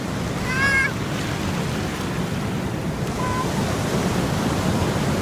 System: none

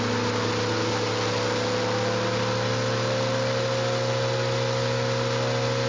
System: none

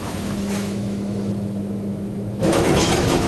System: autoencoder, DAC-VAE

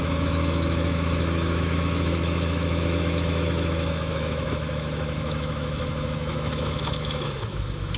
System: autoencoder, DAC-VAE